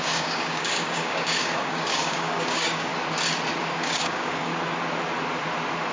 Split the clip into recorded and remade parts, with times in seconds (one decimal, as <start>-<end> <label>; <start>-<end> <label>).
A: 0.0-2.9 remade; 2.9-3.6 recorded; 3.6-4.5 remade; 4.5-5.9 recorded